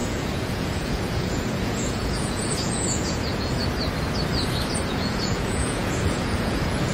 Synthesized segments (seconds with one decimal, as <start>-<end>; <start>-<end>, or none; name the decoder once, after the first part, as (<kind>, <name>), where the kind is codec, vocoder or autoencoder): 0.0-3.6 (vocoder, Vocos); 4.9-6.9